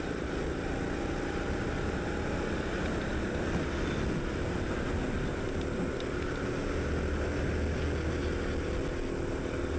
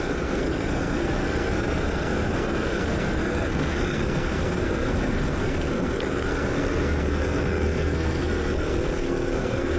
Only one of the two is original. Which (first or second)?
first